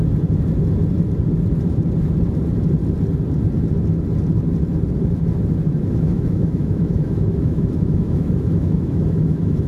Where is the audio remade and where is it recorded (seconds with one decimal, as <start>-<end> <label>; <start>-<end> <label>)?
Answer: 0.0-5.8 recorded; 5.8-9.7 remade